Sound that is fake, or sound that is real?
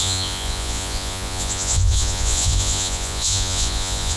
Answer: fake